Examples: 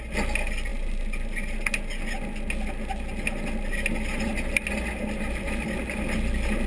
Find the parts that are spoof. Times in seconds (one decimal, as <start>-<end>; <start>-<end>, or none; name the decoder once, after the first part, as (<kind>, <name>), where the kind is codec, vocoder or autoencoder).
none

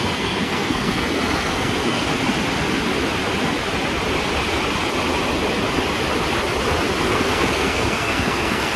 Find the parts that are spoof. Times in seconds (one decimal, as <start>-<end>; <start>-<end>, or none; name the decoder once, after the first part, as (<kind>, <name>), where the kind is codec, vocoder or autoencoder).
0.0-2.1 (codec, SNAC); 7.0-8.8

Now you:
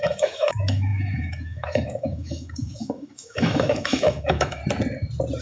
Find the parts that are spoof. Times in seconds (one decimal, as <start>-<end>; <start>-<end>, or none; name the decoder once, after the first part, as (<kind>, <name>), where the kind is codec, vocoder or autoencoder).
0.0-4.6 (autoencoder, DAC-VAE)

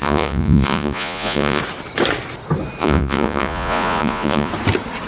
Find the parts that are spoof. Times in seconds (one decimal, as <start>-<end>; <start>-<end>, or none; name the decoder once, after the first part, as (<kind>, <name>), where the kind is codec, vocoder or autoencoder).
0.0-1.6 (vocoder, Vocos); 2.8-4.5